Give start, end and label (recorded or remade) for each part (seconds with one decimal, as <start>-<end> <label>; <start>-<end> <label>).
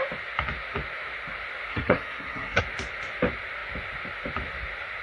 0.0-1.7 recorded; 1.7-2.6 remade; 2.6-5.0 recorded